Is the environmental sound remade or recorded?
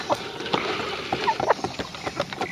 remade